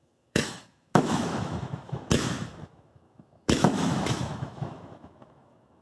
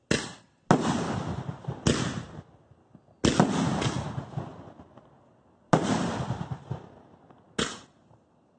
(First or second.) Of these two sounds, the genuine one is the second